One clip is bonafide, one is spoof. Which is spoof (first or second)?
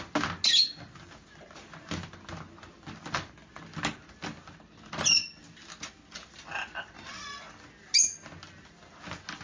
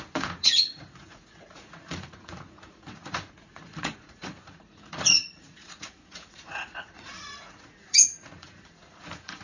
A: second